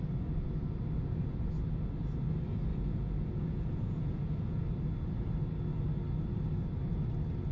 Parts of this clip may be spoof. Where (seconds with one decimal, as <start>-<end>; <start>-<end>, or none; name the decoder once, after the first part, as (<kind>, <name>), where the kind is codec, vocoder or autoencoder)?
2.7-4.6 (vocoder, Vocos)